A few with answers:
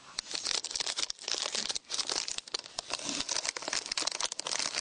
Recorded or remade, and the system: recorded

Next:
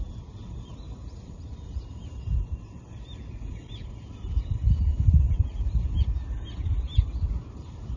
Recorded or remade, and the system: recorded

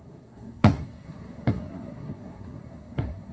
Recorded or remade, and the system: remade, codec, SNAC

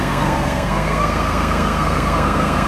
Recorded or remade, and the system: remade, codec, SNAC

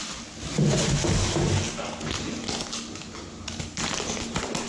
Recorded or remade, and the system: recorded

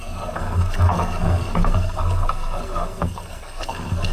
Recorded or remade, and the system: remade, codec, SNAC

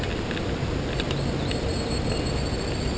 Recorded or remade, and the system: recorded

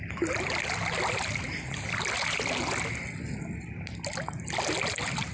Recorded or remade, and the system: recorded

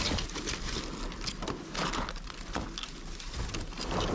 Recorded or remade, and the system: recorded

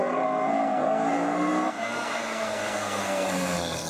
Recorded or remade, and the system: remade, codec, SNAC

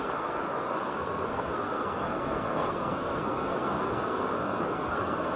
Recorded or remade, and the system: remade, codec, SNAC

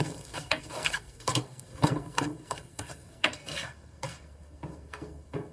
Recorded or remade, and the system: remade, codec, SNAC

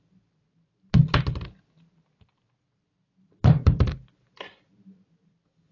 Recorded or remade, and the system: recorded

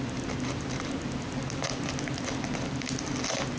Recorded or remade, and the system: recorded